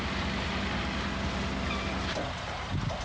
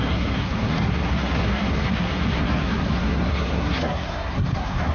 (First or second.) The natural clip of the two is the first